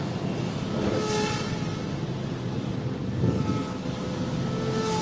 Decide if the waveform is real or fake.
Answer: real